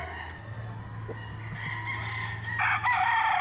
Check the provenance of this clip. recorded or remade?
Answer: recorded